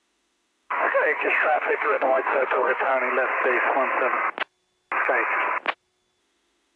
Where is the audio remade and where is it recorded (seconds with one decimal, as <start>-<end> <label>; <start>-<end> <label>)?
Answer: 0.0-2.9 remade; 2.9-6.2 recorded; 6.2-6.8 remade

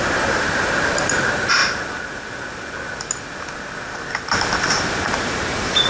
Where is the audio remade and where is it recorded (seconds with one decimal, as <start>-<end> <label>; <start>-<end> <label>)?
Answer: 0.0-1.6 remade; 1.6-5.1 recorded; 5.1-5.9 remade